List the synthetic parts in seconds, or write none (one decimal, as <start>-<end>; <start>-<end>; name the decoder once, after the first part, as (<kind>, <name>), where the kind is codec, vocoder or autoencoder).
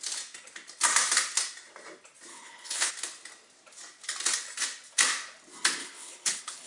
2.3-2.9 (codec, HILCodec); 5.8-6.7